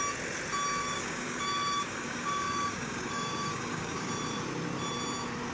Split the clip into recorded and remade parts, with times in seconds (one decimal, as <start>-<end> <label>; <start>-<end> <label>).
0.0-0.8 recorded; 0.8-4.1 remade; 4.1-5.5 recorded

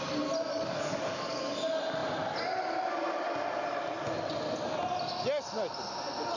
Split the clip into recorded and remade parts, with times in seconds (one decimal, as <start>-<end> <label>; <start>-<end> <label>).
0.0-0.5 recorded; 0.5-1.4 remade; 1.4-6.4 recorded